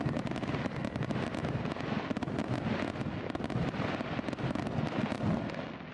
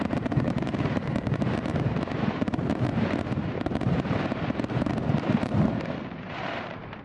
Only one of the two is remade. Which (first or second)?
second